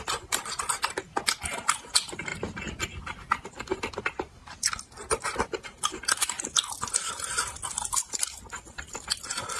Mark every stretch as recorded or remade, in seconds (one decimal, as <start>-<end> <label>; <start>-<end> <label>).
0.0-9.6 recorded